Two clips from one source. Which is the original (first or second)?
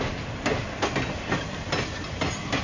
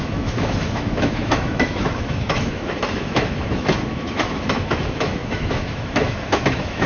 first